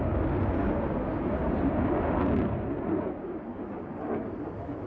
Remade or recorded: recorded